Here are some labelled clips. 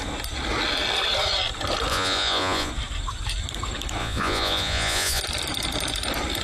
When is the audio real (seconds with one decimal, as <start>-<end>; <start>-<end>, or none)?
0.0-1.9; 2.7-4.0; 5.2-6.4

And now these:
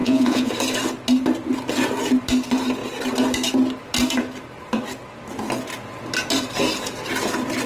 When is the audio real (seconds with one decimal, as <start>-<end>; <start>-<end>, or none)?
0.5-7.7

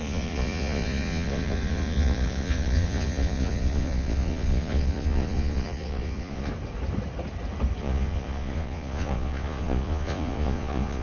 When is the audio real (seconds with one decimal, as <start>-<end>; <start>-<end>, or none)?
6.5-7.8

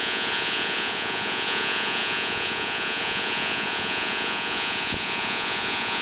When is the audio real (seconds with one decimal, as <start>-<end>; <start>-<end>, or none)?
none

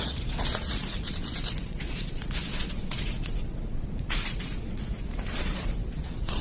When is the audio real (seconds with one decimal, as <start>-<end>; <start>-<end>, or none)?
none

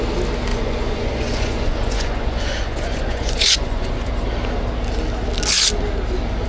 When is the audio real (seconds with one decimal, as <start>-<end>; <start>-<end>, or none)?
0.0-0.5; 4.1-6.5